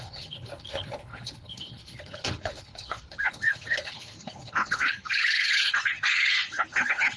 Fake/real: fake